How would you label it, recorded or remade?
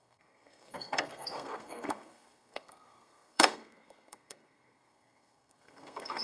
remade